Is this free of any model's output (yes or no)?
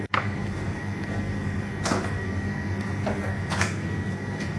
no